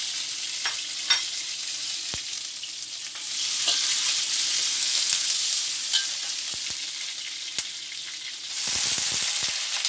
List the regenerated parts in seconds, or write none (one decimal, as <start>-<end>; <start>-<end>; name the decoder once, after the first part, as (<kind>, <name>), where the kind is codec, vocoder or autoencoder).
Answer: 4.7-5.2 (codec, SNAC)